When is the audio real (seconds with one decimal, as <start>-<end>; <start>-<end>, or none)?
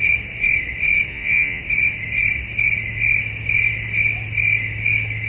0.0-1.1; 1.6-5.3